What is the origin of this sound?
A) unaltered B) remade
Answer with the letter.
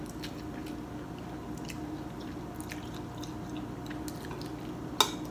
A